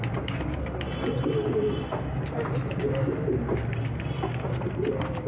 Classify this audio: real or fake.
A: fake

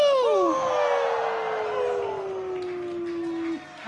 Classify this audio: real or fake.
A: real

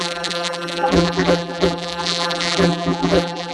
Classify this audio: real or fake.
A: fake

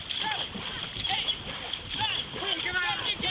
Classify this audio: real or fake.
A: real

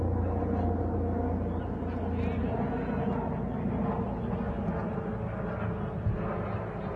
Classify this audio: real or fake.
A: real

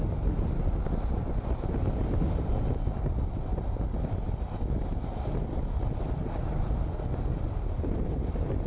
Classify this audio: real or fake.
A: real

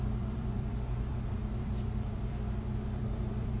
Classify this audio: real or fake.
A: fake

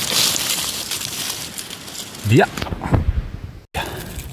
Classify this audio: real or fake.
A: real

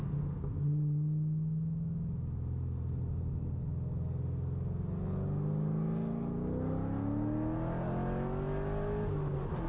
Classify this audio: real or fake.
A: real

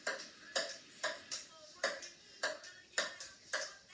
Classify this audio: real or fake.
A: real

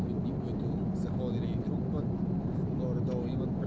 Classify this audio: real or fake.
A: real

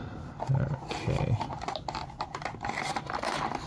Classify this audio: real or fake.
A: real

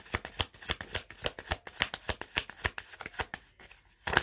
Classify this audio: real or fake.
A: real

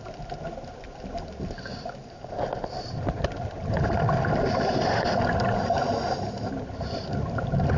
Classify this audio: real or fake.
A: real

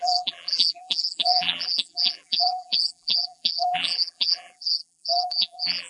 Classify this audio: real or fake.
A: fake